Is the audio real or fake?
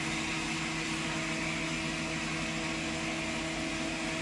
real